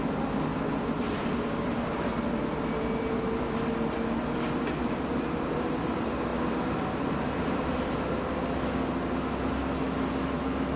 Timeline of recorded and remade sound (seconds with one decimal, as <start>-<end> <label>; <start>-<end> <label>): 0.0-10.8 recorded